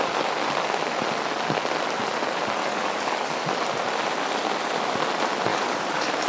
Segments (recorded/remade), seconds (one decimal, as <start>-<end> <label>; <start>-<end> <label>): 0.0-2.6 recorded; 2.6-3.4 remade; 3.4-5.5 recorded; 5.5-6.3 remade